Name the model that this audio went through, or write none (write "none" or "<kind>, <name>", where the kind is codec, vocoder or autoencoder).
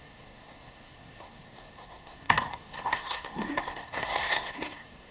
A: codec, SNAC